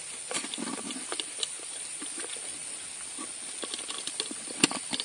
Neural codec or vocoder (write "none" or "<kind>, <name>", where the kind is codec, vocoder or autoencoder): none